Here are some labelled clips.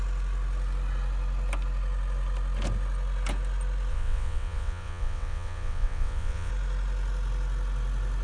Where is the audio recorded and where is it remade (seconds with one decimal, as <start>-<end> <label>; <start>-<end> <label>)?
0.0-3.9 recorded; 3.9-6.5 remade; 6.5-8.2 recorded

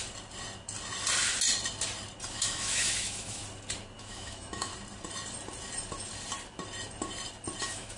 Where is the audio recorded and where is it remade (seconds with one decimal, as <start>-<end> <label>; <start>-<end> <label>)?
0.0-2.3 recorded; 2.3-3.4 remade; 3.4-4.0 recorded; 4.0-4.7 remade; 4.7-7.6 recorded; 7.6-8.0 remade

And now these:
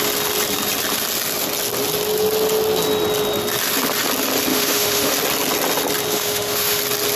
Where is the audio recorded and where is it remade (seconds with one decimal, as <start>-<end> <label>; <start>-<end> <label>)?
0.0-4.5 recorded; 4.5-5.1 remade; 5.1-6.1 recorded; 6.1-6.8 remade; 6.8-7.2 recorded

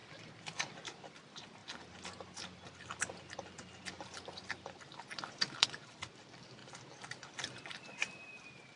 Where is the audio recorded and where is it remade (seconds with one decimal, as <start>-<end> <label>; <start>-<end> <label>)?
0.0-1.6 remade; 1.6-3.9 recorded; 3.9-8.8 remade

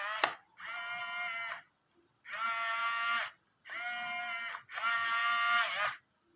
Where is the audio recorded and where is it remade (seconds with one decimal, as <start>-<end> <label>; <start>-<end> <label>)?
0.0-6.4 recorded

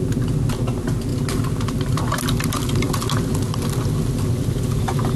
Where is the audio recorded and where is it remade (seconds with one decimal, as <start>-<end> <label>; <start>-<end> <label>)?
0.0-5.2 recorded

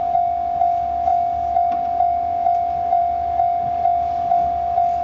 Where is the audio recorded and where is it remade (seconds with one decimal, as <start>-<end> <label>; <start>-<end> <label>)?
0.0-5.0 recorded